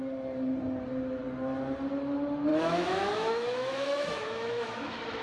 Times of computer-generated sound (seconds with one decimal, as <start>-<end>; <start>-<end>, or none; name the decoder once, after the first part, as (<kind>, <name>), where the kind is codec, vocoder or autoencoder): 2.5-5.2 (autoencoder, DAC-VAE)